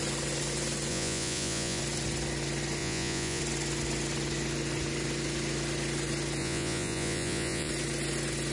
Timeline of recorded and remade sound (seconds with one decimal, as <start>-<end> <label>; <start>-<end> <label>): 0.0-0.9 recorded; 0.9-1.8 remade; 1.8-2.8 recorded; 2.8-3.4 remade; 3.4-6.4 recorded; 6.4-7.7 remade; 7.7-8.5 recorded